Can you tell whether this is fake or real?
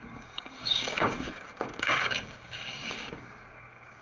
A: fake